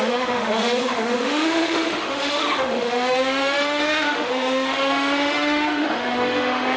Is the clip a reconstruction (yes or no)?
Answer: yes